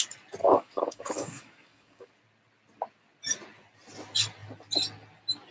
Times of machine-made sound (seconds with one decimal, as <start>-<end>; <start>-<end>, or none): 0.4-2.1